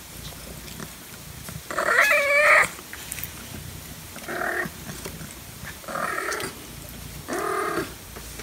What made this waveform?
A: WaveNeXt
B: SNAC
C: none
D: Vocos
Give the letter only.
C